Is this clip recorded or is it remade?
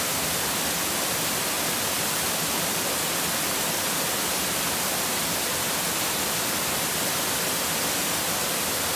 remade